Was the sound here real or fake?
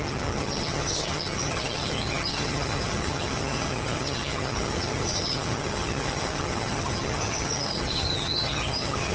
fake